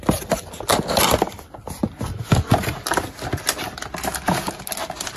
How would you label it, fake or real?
real